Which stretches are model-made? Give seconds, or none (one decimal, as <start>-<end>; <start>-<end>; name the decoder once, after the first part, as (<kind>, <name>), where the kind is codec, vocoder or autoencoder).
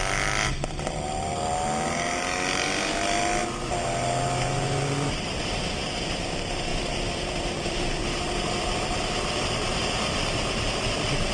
6.7-8.1 (vocoder, BigVGAN v2)